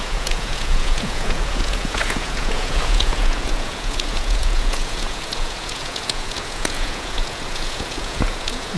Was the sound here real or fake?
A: fake